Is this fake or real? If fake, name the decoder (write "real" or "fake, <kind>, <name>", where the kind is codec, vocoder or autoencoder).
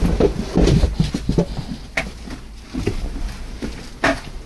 real